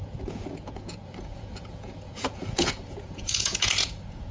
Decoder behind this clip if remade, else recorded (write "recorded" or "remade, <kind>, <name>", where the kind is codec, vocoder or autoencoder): remade, vocoder, Vocos